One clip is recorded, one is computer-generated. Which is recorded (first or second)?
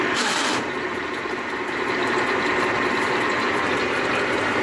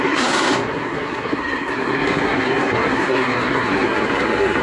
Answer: first